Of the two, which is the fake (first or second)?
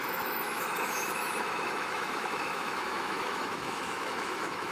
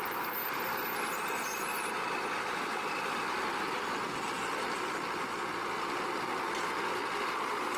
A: first